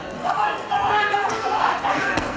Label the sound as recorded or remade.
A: remade